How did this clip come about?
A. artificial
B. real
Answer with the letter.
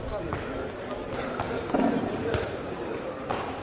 B